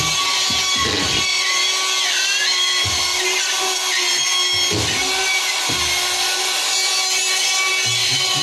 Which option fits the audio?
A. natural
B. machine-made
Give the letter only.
A